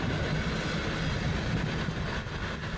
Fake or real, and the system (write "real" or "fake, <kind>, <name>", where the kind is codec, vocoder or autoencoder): real